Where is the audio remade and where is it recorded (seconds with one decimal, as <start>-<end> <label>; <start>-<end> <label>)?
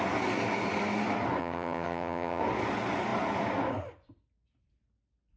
0.0-1.4 recorded; 1.4-2.4 remade; 2.4-5.4 recorded